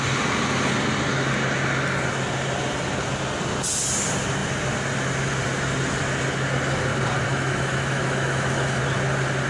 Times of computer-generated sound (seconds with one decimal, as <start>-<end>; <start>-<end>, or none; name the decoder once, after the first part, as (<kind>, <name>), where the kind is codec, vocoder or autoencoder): 7.3-8.8 (autoencoder, DAC-VAE)

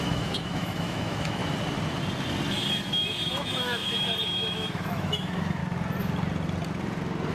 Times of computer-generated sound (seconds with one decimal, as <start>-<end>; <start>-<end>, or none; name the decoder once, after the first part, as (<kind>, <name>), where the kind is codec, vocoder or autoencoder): 0.0-1.4 (autoencoder, DAC-VAE); 2.7-5.6

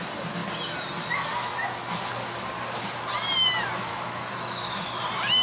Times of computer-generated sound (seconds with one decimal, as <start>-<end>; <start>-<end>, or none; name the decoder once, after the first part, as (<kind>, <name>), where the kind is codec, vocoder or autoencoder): 3.9-5.0 (autoencoder, DAC-VAE)

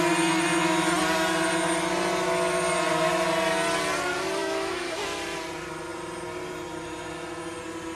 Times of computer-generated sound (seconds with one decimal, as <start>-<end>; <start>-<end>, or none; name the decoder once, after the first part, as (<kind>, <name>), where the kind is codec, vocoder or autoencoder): 4.4-5.0 (autoencoder, DAC-VAE)